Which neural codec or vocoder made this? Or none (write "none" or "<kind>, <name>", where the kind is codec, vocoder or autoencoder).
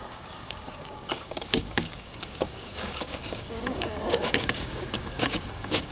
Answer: codec, DAC